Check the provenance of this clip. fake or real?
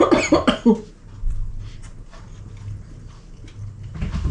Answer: real